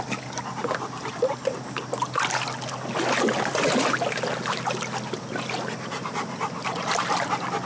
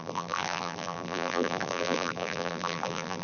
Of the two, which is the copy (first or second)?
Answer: second